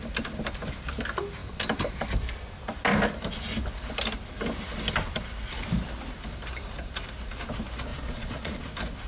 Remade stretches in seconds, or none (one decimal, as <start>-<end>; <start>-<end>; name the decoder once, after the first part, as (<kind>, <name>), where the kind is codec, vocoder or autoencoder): 7.9-8.6 (vocoder, Vocos)